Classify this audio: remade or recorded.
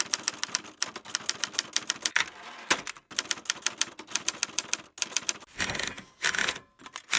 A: recorded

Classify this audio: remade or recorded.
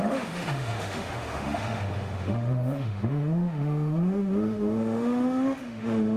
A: remade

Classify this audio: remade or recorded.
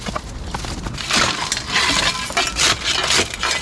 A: recorded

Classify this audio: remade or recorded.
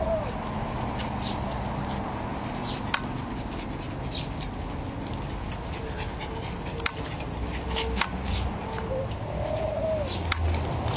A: recorded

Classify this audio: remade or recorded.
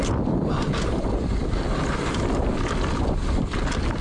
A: recorded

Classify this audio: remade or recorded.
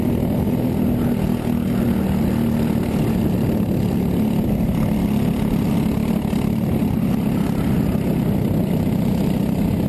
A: recorded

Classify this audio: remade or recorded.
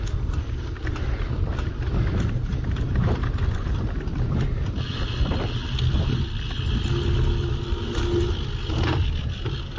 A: recorded